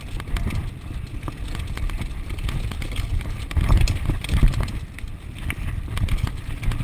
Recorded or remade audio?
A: recorded